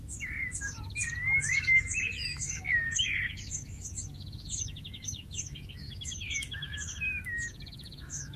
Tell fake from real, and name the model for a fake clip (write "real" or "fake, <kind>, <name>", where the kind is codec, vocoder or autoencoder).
fake, autoencoder, DAC-VAE